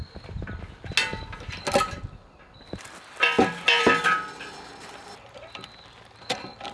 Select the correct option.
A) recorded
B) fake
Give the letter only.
A